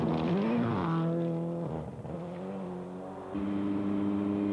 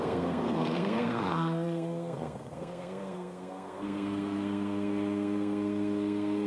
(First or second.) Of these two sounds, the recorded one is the first